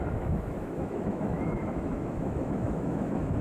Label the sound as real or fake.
fake